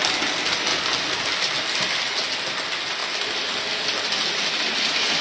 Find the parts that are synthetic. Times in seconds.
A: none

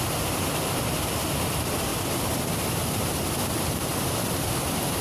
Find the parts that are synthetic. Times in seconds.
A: 1.9-5.0 (vocoder, BigVGAN v2)

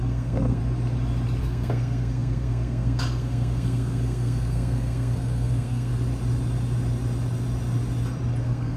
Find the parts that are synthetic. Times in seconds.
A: 0.0-0.6 (codec, SNAC); 1.4-5.9; 8.4-8.8